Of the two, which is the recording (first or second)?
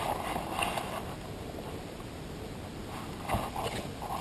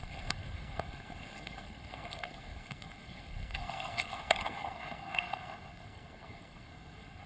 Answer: first